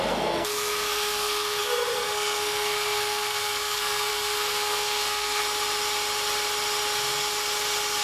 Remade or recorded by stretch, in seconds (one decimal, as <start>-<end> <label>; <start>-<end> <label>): 0.0-5.4 remade; 5.4-8.0 recorded